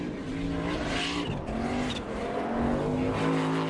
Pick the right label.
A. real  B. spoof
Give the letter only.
A